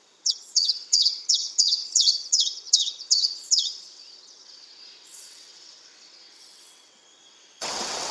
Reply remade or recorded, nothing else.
remade